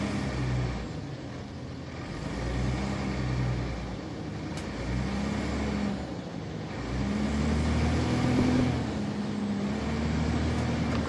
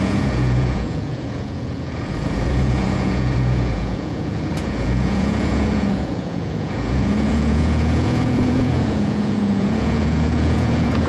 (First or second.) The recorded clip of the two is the first